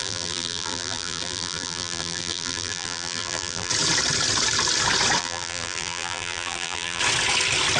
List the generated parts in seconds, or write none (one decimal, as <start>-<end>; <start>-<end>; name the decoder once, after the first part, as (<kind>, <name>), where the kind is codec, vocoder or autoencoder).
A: 0.0-3.7 (vocoder, BigVGAN v2); 5.2-7.0